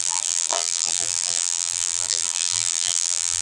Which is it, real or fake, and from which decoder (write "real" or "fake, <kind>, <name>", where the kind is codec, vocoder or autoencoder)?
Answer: fake, vocoder, BigVGAN v2